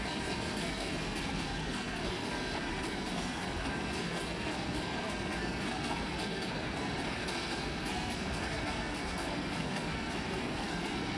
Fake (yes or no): yes